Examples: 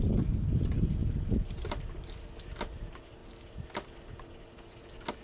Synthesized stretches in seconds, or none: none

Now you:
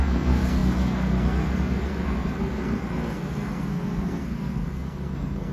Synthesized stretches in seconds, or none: 0.0-5.5 (codec, SNAC)

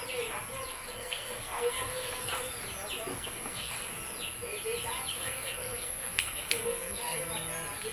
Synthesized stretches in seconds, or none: 0.7-2.3 (codec, SNAC); 3.1-3.9; 5.1-7.3

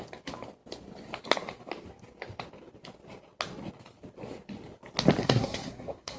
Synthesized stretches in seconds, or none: 5.2-6.2 (codec, SNAC)